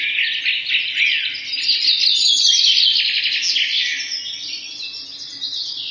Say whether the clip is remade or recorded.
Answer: recorded